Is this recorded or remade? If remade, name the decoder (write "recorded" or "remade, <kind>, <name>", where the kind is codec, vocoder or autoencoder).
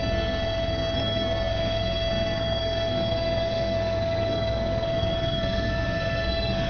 remade, codec, SNAC